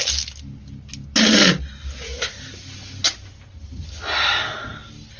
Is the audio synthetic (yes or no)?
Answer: no